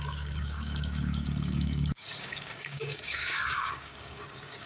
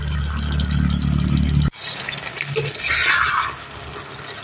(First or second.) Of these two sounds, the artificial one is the first